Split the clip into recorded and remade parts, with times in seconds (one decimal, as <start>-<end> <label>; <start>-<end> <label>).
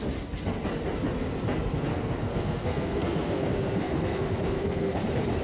0.0-1.9 recorded; 1.9-5.0 remade; 5.0-5.4 recorded